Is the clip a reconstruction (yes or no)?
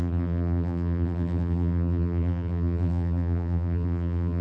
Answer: yes